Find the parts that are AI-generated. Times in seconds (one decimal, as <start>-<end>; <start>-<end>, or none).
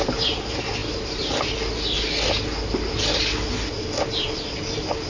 none